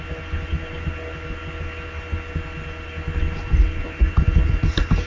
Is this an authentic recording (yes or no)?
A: yes